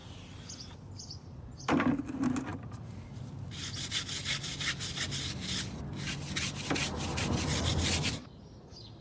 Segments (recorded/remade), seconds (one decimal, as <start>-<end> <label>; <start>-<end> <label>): 0.0-9.0 recorded